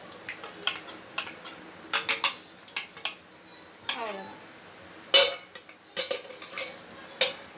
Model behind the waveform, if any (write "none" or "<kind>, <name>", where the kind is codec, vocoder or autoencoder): none